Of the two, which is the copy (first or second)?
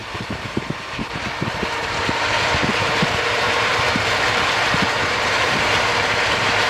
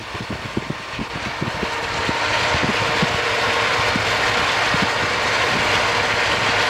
first